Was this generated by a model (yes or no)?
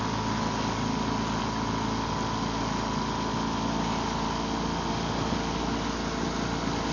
no